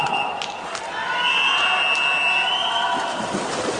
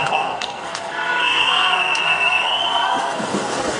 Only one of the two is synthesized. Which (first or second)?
second